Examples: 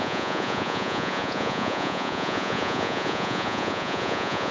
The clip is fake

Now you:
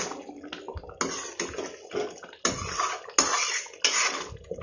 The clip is real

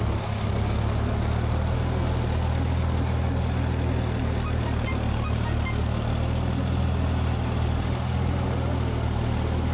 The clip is real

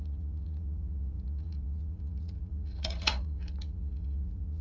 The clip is fake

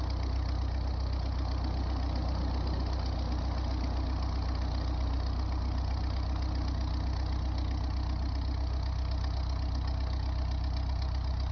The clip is real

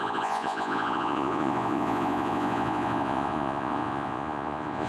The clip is fake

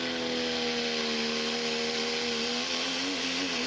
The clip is real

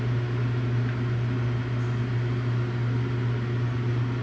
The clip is real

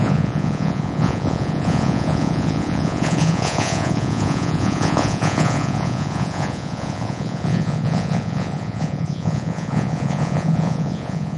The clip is fake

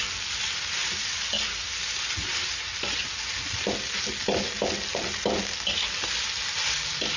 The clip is real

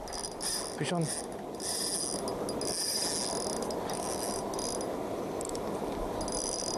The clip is real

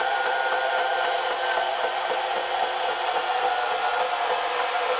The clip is real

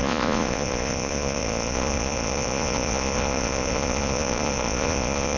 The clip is fake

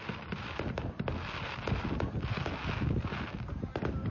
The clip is real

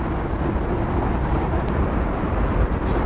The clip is real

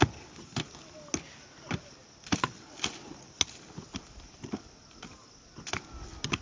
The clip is real